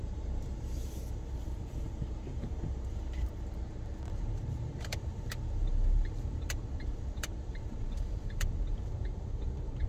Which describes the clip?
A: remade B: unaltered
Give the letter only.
A